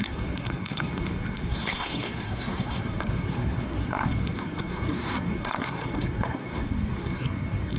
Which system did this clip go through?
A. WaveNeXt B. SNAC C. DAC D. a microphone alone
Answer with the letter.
B